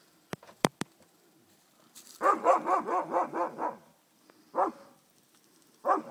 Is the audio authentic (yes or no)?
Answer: no